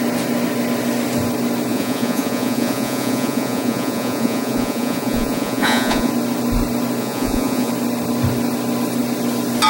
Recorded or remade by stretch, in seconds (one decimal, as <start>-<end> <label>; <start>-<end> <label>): 0.0-1.7 recorded; 1.7-6.1 remade; 6.1-7.0 recorded; 7.0-7.7 remade; 7.7-9.7 recorded